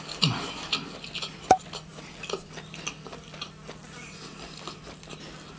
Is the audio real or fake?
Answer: real